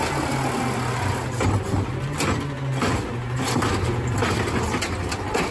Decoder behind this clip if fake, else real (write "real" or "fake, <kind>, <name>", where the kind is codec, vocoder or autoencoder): real